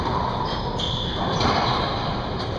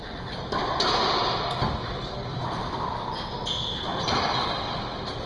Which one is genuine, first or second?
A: second